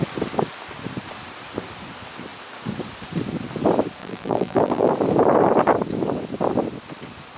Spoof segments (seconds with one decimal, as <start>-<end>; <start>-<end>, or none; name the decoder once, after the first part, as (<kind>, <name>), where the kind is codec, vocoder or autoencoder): 4.0-4.9 (vocoder, BigVGAN v2)